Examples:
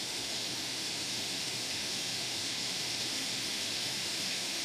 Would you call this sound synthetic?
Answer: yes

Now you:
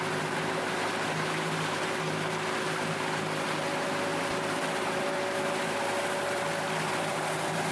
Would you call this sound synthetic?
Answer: no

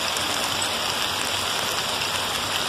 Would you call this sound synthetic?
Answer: no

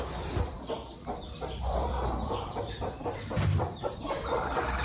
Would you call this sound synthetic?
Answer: yes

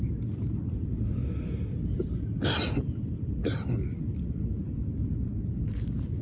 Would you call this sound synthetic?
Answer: no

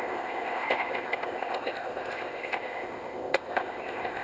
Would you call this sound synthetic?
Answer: yes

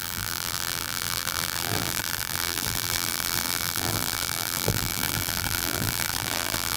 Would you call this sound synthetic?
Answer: yes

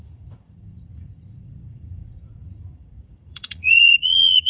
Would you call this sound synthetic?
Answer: yes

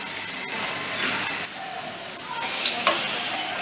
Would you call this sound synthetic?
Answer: no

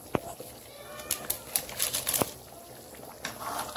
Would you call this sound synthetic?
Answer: no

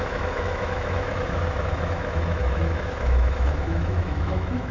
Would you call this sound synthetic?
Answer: yes